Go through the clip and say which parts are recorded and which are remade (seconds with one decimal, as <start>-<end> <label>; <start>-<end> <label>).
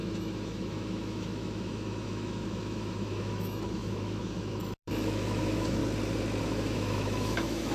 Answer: 0.0-5.8 remade; 5.8-6.4 recorded; 6.4-7.7 remade